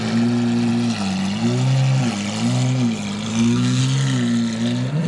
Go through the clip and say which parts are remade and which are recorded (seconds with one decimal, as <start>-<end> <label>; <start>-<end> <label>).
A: 0.0-3.3 recorded; 3.3-3.8 remade; 3.8-5.1 recorded